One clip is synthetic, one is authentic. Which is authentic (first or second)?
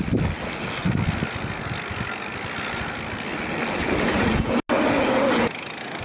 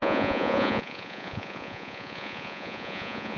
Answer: first